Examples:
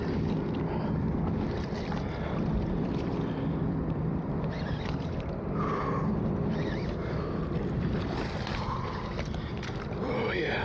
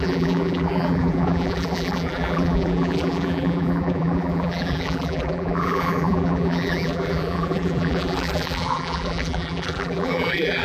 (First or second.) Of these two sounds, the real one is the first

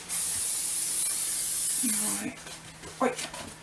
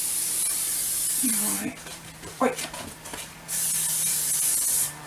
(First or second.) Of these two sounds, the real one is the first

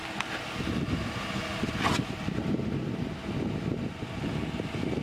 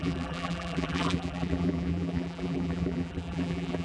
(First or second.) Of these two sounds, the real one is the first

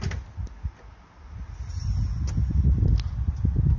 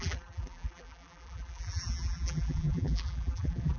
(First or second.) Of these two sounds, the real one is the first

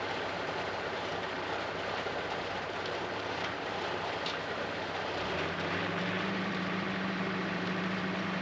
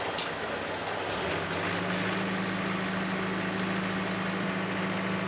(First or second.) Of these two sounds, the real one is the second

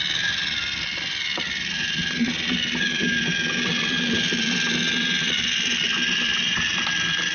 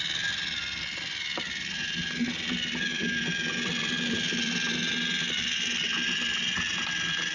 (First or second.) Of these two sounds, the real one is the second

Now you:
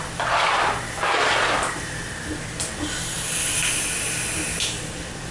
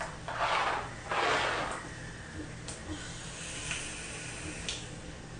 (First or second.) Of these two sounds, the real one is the second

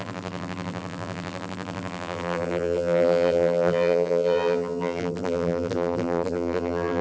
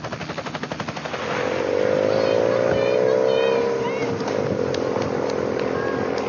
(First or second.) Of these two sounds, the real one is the second